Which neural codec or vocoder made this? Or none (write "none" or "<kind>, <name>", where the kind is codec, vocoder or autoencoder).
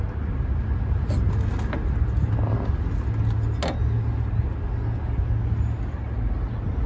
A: none